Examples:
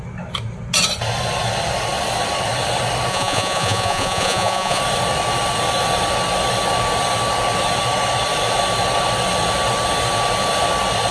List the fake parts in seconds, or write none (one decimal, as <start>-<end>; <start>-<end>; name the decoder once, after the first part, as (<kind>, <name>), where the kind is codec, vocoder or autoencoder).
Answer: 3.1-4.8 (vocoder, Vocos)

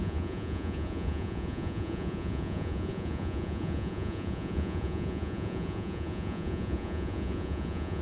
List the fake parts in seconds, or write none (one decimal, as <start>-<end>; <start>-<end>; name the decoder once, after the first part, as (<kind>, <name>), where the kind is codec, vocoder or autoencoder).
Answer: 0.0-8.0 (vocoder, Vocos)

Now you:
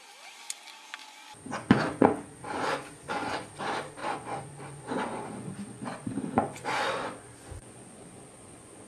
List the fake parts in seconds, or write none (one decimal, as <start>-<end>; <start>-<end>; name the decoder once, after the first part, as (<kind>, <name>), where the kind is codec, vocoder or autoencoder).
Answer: 1.0-3.5 (vocoder, Vocos); 4.0-8.9

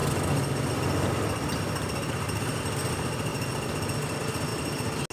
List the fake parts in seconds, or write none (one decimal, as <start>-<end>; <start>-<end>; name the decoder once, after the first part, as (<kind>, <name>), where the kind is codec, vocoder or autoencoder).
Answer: none

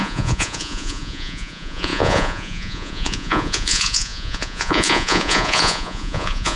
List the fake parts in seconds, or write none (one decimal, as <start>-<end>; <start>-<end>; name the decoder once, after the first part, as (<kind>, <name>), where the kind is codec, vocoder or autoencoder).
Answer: 0.0-6.6 (vocoder, Vocos)

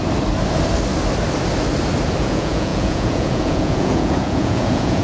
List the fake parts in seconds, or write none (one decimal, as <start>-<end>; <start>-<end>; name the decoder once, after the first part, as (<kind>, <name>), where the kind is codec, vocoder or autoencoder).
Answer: 2.2-5.0 (vocoder, Vocos)

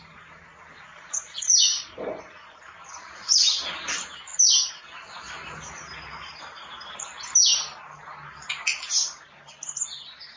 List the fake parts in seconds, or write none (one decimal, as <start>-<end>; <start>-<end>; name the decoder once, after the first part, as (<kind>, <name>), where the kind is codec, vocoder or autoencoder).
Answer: 0.9-2.6 (vocoder, Vocos)

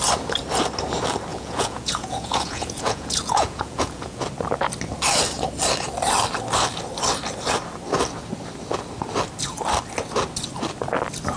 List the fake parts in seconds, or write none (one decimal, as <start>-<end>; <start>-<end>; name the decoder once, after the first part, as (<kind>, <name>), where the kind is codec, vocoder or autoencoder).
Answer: 1.3-4.2 (vocoder, Vocos)